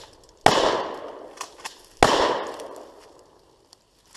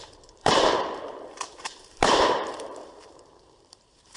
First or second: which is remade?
second